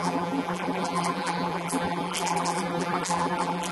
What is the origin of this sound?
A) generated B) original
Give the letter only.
A